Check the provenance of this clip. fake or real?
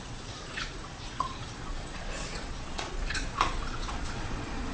fake